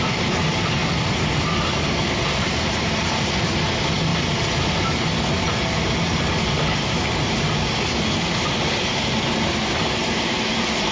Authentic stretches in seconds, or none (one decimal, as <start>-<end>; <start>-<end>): 0.0-10.9

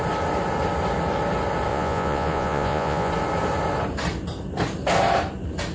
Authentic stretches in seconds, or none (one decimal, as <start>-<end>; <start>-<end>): 0.0-1.7; 3.1-5.7

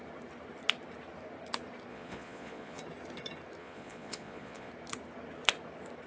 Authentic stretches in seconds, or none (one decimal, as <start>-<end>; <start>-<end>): 0.0-1.9; 2.8-3.6; 4.7-6.1

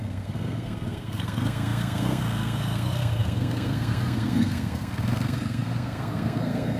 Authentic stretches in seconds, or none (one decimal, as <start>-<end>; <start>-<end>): none

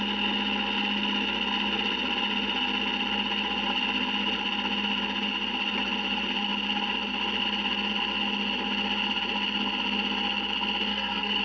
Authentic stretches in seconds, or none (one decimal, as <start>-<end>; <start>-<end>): 0.0-10.9

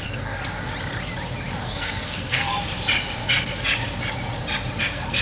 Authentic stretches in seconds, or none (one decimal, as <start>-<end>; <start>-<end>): 0.4-1.6; 2.5-4.8

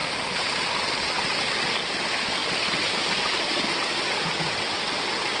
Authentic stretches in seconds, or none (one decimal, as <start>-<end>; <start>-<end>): 0.0-5.4

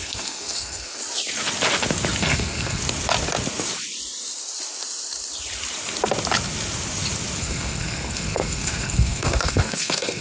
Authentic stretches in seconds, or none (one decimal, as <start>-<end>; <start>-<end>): 1.0-2.2; 2.8-7.4